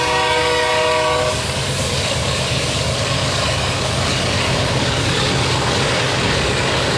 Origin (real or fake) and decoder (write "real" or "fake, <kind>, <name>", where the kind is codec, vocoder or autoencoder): fake, codec, DAC